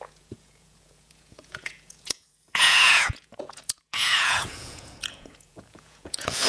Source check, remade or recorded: remade